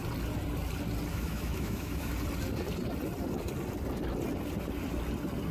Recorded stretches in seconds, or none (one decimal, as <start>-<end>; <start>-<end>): 0.0-1.1; 2.1-5.5